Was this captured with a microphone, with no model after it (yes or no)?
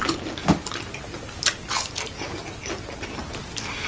yes